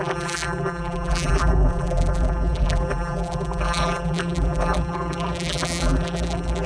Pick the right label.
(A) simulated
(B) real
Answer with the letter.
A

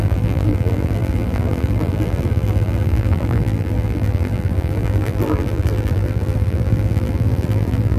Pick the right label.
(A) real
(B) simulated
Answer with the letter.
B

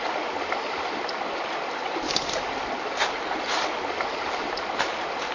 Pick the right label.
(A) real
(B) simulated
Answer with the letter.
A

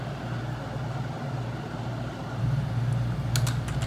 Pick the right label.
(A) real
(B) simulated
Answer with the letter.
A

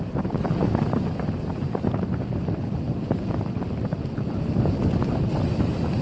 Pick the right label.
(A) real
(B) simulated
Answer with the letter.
A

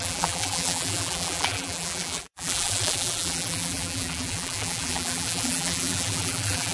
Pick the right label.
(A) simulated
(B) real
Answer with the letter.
A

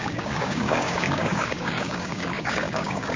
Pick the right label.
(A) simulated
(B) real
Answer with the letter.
A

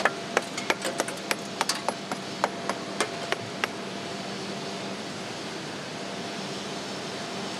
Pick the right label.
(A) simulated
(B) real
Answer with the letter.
B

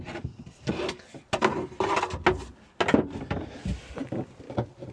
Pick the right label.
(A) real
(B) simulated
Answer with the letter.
A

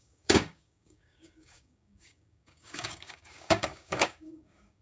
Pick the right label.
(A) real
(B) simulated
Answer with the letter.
B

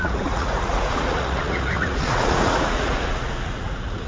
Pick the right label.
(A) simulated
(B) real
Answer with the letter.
A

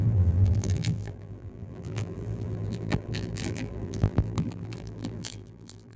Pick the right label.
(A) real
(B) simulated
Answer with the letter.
B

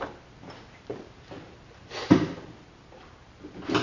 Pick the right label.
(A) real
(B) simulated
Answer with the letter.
A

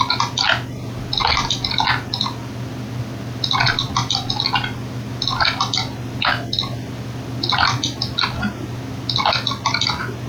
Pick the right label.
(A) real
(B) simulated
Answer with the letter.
A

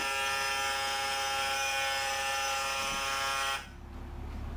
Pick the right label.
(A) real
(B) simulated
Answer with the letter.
A